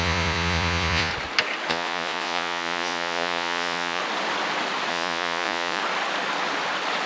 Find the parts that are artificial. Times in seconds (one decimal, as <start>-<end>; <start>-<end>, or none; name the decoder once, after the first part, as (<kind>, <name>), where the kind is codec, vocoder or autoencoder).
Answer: 0.0-1.1 (vocoder, Vocos); 1.7-4.0; 4.9-5.8